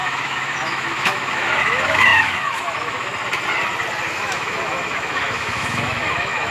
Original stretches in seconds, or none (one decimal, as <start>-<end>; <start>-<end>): 3.1-4.1